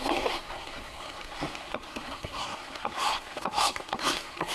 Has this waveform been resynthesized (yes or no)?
yes